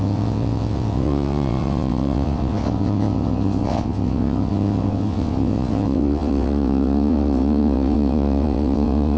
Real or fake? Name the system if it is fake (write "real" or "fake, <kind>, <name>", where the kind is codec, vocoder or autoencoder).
fake, vocoder, WaveNeXt